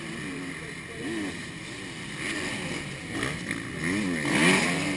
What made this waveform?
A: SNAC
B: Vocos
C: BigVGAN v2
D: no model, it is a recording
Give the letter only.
D